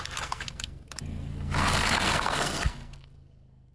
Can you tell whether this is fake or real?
fake